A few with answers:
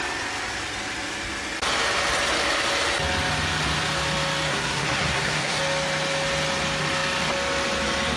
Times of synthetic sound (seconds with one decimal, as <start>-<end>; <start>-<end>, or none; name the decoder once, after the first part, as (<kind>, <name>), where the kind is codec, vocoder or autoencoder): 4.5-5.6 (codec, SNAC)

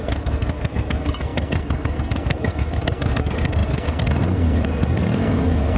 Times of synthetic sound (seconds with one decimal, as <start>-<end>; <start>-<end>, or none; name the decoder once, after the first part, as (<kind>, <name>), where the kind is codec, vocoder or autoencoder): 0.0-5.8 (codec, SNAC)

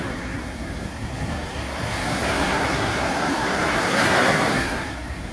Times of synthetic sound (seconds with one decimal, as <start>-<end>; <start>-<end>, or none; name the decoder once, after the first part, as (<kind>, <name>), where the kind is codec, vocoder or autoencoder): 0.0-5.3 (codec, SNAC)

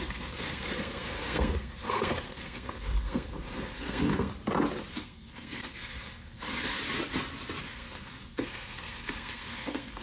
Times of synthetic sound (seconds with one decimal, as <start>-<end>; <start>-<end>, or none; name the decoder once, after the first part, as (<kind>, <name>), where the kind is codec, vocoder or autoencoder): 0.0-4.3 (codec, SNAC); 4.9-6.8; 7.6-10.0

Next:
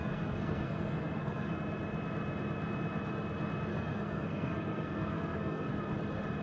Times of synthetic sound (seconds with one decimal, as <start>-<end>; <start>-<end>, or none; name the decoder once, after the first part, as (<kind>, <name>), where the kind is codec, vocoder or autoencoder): 0.0-1.5 (codec, SNAC); 3.7-5.7